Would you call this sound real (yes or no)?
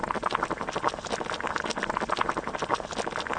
yes